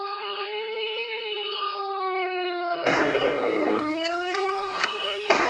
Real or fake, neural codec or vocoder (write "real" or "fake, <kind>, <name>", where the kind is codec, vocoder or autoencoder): fake, codec, SNAC